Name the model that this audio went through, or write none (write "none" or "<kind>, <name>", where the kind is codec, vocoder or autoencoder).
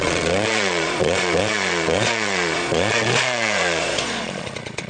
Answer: vocoder, Vocos